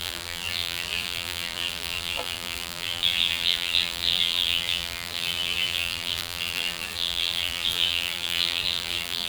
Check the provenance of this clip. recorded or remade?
remade